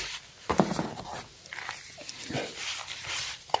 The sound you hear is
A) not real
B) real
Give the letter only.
B